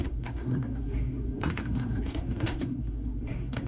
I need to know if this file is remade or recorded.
remade